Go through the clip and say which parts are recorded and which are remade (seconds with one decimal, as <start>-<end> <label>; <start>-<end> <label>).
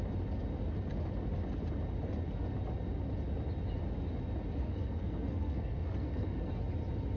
0.0-4.6 recorded; 4.6-6.5 remade; 6.5-7.2 recorded